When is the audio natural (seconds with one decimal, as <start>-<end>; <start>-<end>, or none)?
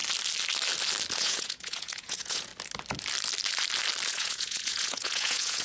0.0-1.2; 2.5-4.1